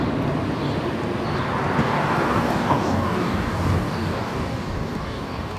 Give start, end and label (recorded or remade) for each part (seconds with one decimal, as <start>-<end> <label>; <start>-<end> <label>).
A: 0.0-1.8 recorded; 1.8-5.6 remade